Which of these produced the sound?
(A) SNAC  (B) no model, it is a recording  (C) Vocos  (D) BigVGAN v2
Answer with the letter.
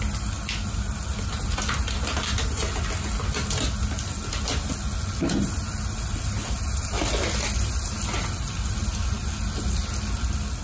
B